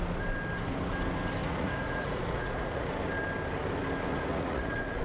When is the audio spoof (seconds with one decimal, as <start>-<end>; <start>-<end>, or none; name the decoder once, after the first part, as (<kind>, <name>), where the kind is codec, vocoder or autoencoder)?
1.4-2.9 (vocoder, Vocos); 4.1-5.0